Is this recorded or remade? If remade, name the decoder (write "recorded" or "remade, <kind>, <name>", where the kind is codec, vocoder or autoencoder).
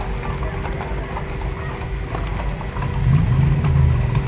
recorded